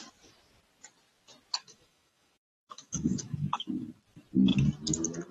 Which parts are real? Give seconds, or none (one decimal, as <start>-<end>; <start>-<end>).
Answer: 0.0-1.6; 3.7-5.3